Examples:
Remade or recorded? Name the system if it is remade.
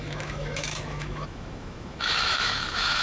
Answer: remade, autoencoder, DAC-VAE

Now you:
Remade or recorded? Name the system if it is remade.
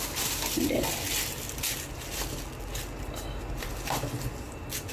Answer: recorded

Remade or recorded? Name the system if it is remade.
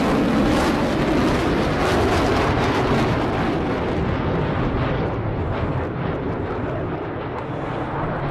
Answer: recorded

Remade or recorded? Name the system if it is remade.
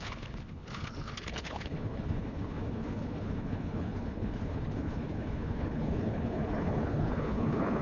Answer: remade, codec, HILCodec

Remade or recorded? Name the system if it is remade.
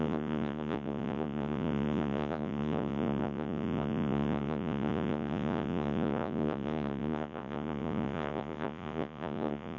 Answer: remade, vocoder, Vocos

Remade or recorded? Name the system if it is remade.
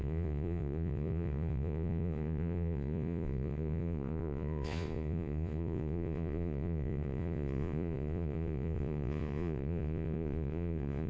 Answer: remade, vocoder, Vocos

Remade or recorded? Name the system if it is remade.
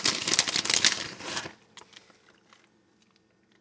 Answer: recorded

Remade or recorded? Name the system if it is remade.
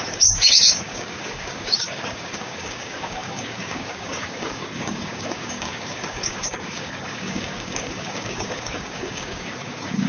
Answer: remade, codec, DAC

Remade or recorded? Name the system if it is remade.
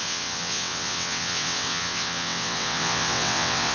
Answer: remade, vocoder, WaveNeXt